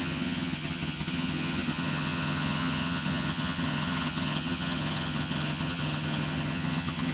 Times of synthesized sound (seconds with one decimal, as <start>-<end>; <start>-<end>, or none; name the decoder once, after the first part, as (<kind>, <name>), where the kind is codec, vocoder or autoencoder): 0.0-7.1 (vocoder, HiFi-GAN)